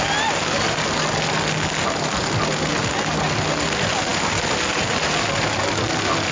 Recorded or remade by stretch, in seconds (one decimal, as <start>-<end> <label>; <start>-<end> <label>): 0.0-6.3 recorded